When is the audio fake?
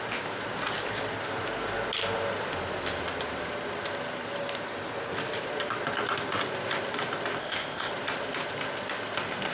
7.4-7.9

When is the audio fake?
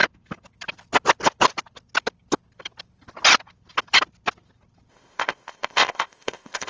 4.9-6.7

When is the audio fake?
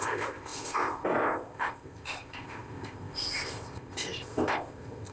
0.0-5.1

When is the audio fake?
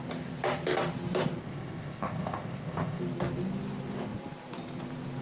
1.4-3.0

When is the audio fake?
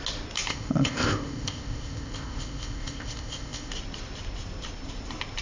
0.5-3.7